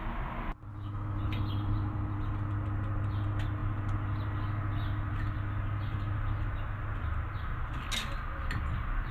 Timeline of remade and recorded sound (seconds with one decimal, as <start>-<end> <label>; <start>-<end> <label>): 0.0-0.7 recorded; 0.7-1.2 remade; 1.2-9.1 recorded